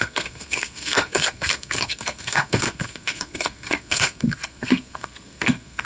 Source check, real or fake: fake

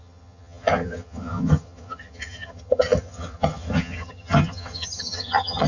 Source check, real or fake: fake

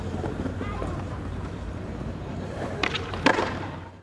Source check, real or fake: fake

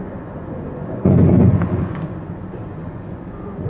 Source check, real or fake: fake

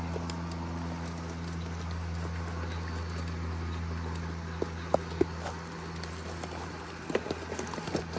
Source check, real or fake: real